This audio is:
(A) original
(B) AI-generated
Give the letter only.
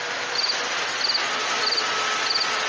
A